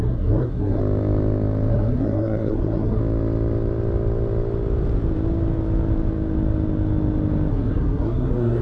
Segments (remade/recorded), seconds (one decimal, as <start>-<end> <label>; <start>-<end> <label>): 0.0-0.8 remade; 0.8-1.7 recorded; 1.7-3.0 remade; 3.0-7.5 recorded; 7.5-8.6 remade